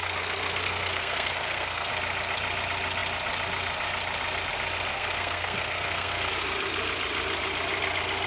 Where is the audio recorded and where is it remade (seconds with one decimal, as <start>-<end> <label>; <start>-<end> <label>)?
0.0-1.9 remade; 1.9-4.9 recorded; 4.9-6.3 remade; 6.3-8.3 recorded